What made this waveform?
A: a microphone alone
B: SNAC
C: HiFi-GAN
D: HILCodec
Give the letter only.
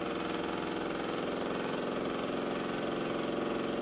A